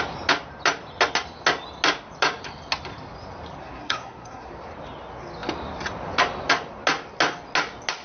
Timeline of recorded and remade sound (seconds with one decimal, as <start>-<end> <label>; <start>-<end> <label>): 0.0-3.6 recorded; 3.6-4.5 remade; 4.5-8.0 recorded